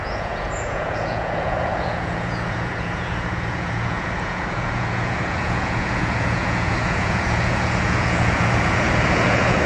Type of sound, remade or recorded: remade